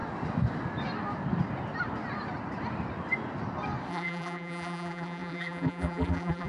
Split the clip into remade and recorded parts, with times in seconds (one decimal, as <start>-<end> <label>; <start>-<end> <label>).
0.0-3.9 recorded; 3.9-6.5 remade